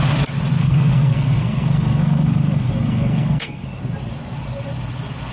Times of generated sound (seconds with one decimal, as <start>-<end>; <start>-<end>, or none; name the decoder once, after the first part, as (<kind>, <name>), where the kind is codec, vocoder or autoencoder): 0.6-3.8 (codec, SNAC)